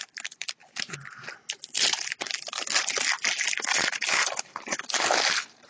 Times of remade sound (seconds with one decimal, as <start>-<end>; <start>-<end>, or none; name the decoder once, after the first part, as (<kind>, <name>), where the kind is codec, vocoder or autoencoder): 0.0-0.6 (vocoder, BigVGAN v2); 1.3-2.7; 3.5-4.7